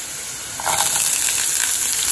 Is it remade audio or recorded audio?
recorded